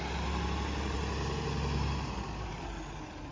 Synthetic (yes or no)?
no